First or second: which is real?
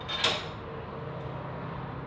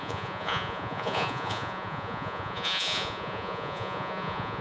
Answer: first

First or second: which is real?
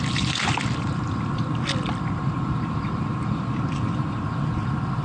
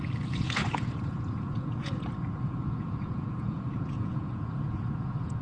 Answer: first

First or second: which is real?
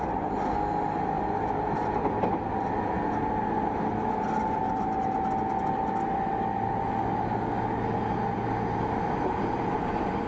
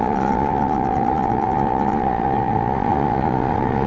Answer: first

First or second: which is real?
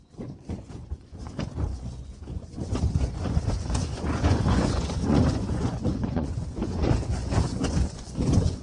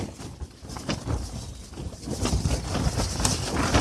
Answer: second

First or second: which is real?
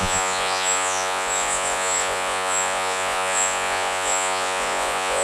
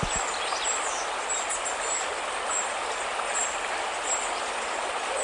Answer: second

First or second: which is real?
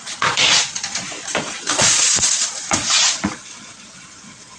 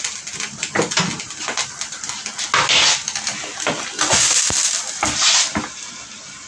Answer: second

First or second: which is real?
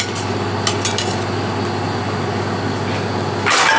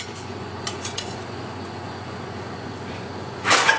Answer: first